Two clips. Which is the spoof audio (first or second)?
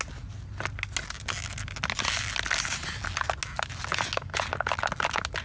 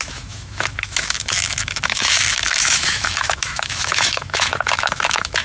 second